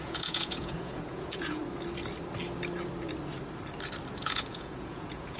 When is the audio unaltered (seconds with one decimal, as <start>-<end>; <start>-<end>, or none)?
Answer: 1.6-4.2